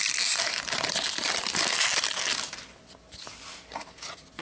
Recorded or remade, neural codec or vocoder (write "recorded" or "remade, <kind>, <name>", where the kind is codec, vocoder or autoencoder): recorded